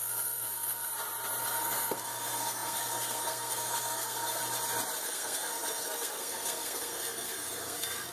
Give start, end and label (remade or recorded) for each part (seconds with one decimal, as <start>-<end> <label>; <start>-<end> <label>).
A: 0.0-0.9 remade; 0.9-1.4 recorded; 1.4-4.4 remade; 4.4-5.0 recorded; 5.0-8.1 remade